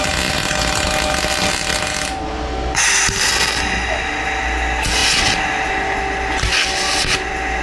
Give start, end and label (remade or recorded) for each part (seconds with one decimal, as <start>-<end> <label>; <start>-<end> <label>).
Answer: 0.0-7.6 recorded